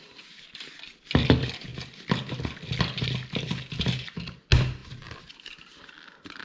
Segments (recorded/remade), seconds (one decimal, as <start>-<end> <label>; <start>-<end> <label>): 0.0-6.4 recorded